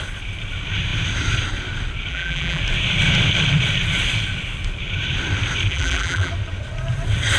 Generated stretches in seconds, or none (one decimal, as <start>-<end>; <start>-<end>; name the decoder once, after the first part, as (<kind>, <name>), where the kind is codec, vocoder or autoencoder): 2.1-2.6 (vocoder, BigVGAN v2); 5.7-6.3